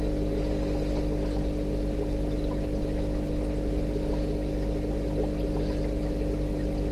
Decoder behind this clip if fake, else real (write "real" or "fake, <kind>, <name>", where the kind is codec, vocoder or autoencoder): real